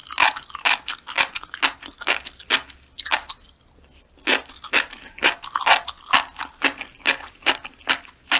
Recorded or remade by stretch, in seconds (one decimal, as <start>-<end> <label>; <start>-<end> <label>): 0.0-8.4 recorded